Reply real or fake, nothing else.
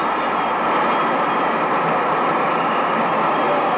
real